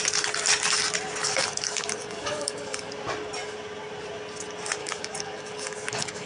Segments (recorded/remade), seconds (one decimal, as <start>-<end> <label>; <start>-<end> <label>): 0.0-1.2 recorded; 1.2-2.9 remade; 2.9-4.8 recorded; 4.8-6.3 remade

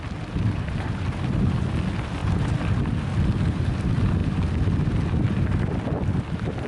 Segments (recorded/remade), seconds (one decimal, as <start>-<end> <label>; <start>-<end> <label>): 0.0-6.7 recorded

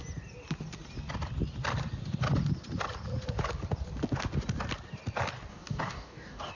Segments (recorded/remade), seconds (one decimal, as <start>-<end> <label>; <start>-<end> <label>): 0.0-5.5 recorded; 5.5-6.5 remade

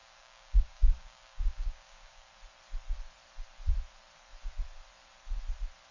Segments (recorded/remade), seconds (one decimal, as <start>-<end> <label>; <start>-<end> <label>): 0.0-2.3 remade; 2.3-5.9 recorded